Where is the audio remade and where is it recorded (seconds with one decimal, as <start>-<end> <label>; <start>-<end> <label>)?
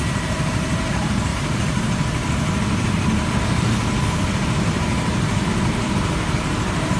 0.0-7.0 remade